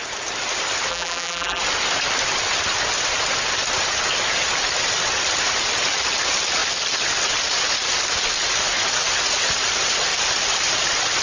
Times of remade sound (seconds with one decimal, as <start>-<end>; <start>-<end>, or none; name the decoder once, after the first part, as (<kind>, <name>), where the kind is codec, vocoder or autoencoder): 0.9-1.6 (vocoder, BigVGAN v2)